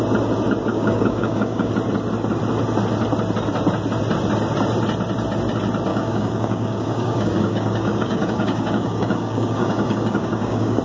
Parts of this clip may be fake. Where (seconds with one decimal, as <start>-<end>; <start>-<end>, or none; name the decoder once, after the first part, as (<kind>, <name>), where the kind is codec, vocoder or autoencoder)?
0.7-1.7 (codec, DAC); 5.9-10.8